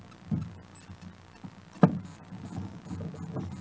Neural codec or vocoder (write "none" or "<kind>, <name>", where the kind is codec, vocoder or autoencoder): none